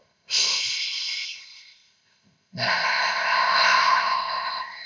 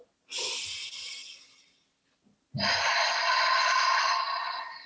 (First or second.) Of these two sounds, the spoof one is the first